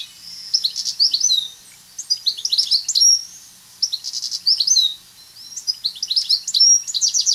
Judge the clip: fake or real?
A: real